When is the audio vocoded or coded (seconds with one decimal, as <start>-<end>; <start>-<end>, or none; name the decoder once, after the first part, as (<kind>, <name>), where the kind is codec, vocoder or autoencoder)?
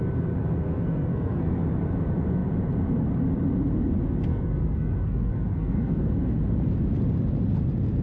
0.4-1.6 (codec, SNAC); 4.3-6.4